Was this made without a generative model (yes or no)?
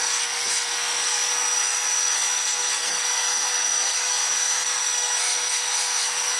no